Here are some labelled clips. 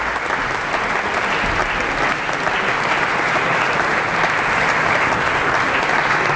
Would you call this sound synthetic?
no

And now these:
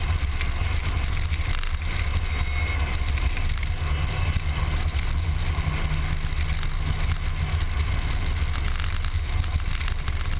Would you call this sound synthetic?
no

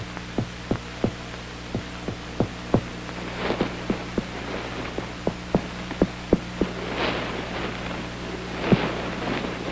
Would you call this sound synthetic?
no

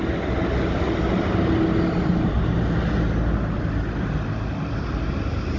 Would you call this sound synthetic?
no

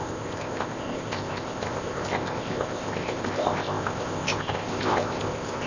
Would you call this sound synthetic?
yes